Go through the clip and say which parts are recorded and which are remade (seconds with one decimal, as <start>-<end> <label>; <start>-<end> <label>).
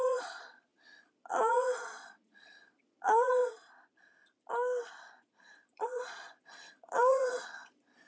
0.0-3.6 remade; 3.6-5.2 recorded; 5.2-8.1 remade